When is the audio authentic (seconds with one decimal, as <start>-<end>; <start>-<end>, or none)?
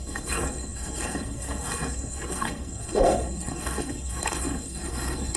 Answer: none